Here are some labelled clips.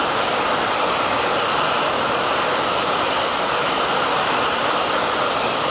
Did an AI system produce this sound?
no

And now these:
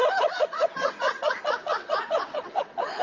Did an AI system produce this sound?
yes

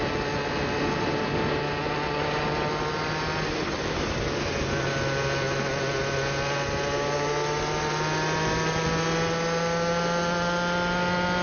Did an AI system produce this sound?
no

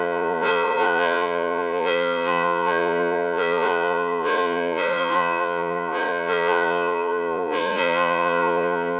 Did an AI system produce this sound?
yes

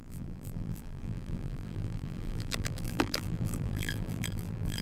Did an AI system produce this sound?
yes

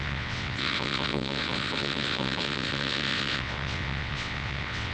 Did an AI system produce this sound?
yes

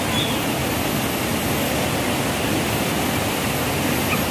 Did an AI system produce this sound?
no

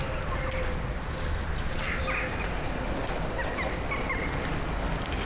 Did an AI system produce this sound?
no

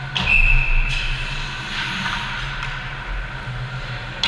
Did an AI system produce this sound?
no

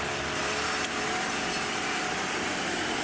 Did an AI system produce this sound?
no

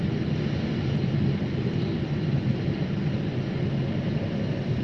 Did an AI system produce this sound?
no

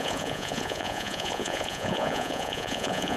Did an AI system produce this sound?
yes